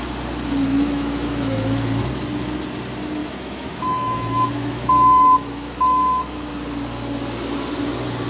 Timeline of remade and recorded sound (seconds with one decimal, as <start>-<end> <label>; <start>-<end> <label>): 0.0-0.7 recorded; 0.7-2.1 remade; 2.1-3.2 recorded; 3.2-6.5 remade; 6.5-8.3 recorded